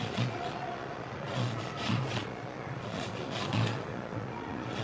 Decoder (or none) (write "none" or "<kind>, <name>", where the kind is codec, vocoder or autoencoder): vocoder, Vocos